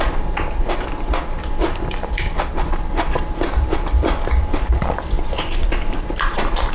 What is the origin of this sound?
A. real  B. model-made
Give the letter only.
A